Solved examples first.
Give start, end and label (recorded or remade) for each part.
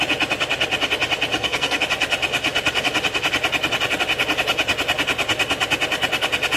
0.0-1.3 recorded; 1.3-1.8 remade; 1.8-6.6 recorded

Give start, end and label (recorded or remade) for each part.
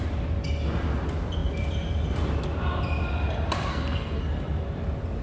0.0-3.7 recorded; 3.7-4.2 remade; 4.2-5.2 recorded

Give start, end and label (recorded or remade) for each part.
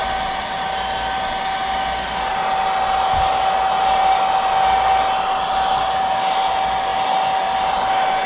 0.0-8.3 recorded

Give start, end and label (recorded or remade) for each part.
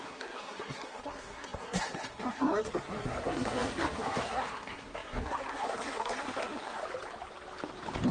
0.0-6.8 remade; 6.8-8.1 recorded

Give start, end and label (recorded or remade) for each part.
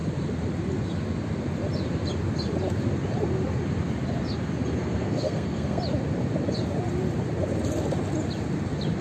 0.0-4.8 recorded; 4.8-5.8 remade; 5.8-9.0 recorded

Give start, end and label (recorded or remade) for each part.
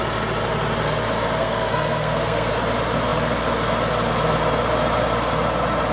0.0-1.4 recorded; 1.4-2.5 remade; 2.5-5.9 recorded